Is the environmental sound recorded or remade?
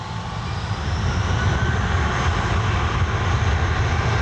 recorded